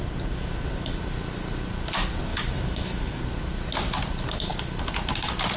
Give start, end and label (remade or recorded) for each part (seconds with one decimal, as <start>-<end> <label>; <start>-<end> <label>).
0.0-2.3 recorded; 2.3-3.2 remade; 3.2-5.6 recorded